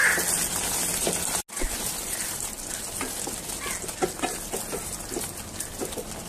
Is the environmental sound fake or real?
real